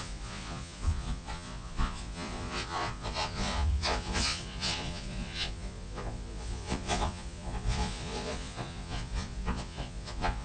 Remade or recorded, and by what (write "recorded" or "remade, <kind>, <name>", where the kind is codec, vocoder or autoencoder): remade, vocoder, Vocos